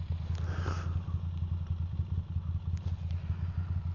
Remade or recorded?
recorded